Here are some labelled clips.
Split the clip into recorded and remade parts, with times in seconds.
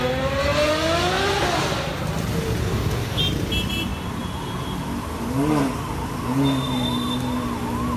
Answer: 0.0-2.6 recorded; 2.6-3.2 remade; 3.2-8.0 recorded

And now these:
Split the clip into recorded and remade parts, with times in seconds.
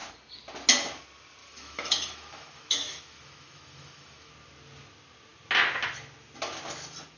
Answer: 0.0-1.4 recorded; 1.4-4.3 remade; 4.3-7.2 recorded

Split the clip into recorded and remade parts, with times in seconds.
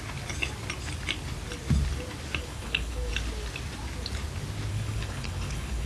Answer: 0.0-2.4 recorded; 2.4-3.1 remade; 3.1-4.7 recorded; 4.7-5.9 remade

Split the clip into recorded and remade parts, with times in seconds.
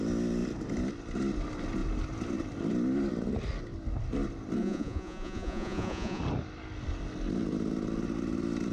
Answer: 0.0-4.6 recorded; 4.6-6.2 remade; 6.2-8.7 recorded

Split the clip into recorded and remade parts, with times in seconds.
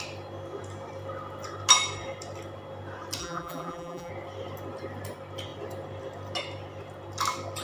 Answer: 0.0-3.2 recorded; 3.2-4.1 remade; 4.1-7.6 recorded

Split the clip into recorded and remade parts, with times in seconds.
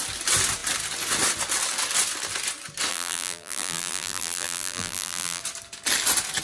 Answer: 0.0-2.9 recorded; 2.9-5.4 remade; 5.4-6.4 recorded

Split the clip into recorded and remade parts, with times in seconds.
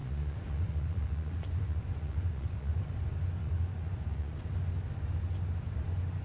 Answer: 0.0-3.0 remade; 3.0-3.4 recorded; 3.4-4.5 remade; 4.5-6.2 recorded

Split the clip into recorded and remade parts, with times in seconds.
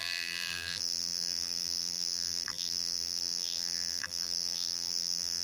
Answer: 0.0-5.4 remade